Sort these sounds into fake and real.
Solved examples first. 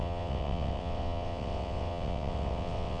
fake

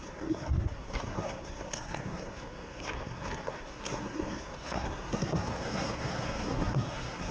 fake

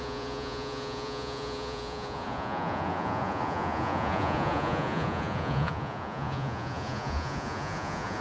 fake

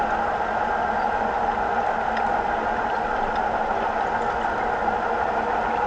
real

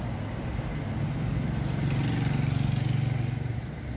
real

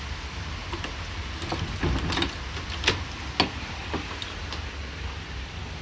real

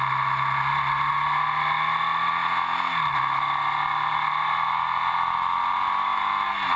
real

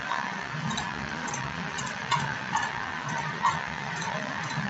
fake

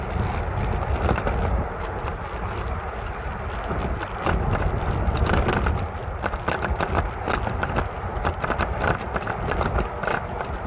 real